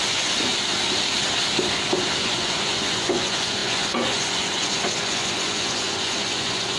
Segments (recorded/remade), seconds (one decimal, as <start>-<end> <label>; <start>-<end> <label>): 0.0-0.5 remade; 0.5-2.2 recorded; 2.2-6.8 remade